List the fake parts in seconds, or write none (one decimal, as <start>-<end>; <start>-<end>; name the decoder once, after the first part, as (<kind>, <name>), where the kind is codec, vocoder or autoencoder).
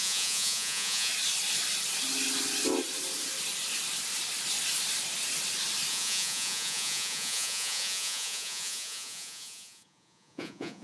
0.0-1.1 (vocoder, Vocos); 5.9-10.8